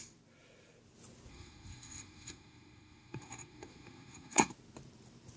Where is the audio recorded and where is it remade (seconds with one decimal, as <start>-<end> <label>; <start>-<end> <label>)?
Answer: 0.0-1.3 recorded; 1.3-4.5 remade; 4.5-5.4 recorded